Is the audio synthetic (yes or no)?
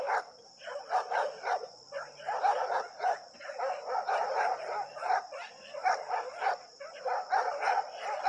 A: no